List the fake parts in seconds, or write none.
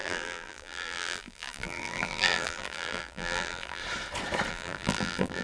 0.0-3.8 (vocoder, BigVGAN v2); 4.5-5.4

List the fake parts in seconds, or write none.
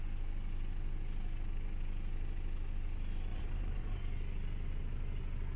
3.3-4.0 (vocoder, BigVGAN v2)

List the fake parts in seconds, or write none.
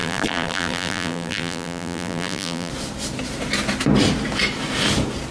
0.0-2.7 (vocoder, BigVGAN v2)